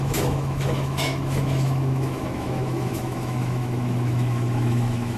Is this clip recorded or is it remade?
remade